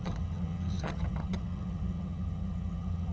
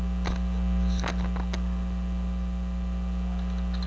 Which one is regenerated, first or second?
first